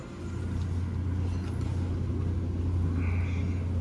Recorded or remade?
recorded